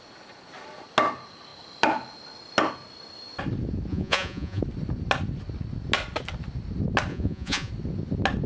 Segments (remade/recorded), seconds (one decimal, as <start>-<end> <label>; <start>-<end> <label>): 0.0-3.9 recorded; 3.9-4.6 remade; 4.6-7.1 recorded; 7.1-7.7 remade; 7.7-8.5 recorded